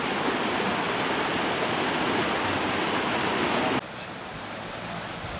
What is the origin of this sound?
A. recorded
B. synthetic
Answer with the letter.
A